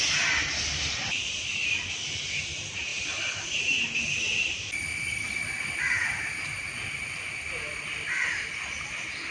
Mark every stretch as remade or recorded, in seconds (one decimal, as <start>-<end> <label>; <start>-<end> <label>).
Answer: 0.0-9.3 recorded